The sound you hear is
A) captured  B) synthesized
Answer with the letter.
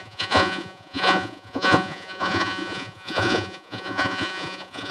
B